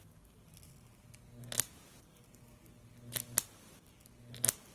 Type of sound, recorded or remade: recorded